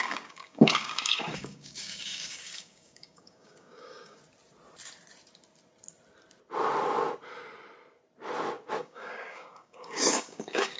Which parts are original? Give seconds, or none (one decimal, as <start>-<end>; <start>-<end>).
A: 4.2-8.8